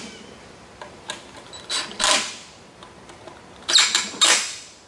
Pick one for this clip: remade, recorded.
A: recorded